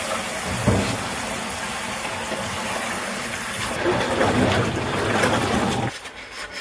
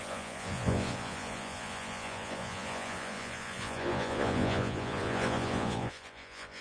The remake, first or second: second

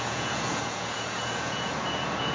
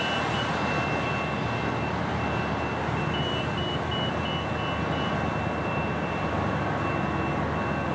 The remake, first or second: first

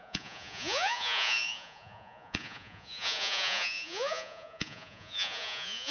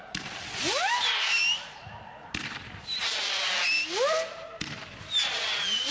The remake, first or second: first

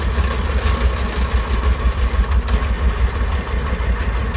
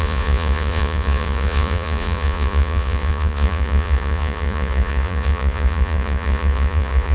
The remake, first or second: second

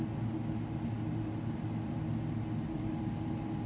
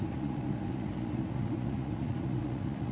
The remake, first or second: second